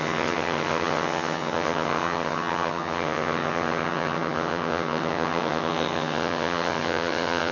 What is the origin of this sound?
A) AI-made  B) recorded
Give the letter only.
A